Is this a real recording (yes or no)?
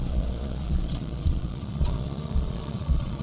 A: no